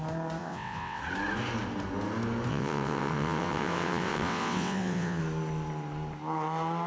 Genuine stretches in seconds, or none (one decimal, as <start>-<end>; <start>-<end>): 0.0-0.4; 1.0-2.5; 5.2-6.9